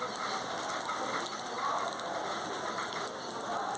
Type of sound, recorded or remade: recorded